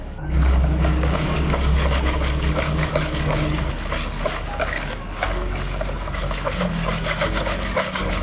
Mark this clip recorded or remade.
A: remade